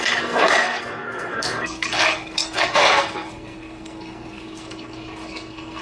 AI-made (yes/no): yes